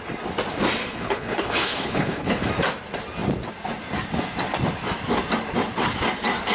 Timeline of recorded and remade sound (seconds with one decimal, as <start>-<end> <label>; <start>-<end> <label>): 0.0-0.8 recorded; 0.8-2.5 remade; 2.5-6.5 recorded